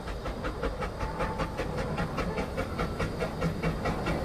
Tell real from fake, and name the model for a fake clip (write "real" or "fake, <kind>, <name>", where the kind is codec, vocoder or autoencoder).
real